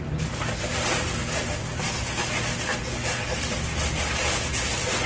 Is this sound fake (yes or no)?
no